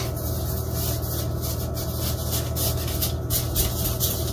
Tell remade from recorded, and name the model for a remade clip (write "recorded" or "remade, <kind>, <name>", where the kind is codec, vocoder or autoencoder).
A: recorded